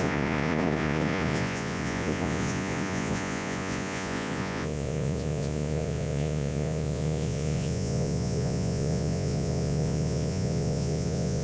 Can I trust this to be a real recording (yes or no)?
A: no